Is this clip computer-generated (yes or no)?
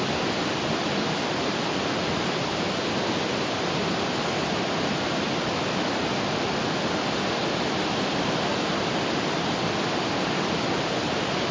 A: no